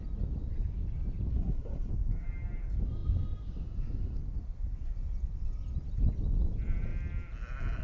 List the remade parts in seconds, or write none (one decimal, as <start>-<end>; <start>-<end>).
1.3-1.9